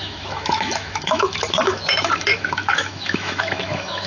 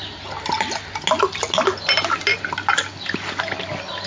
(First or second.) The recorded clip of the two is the second